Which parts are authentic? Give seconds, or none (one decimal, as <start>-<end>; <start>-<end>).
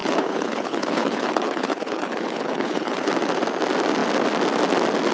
3.1-5.1